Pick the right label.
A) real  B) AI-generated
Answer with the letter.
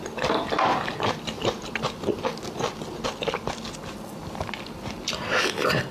A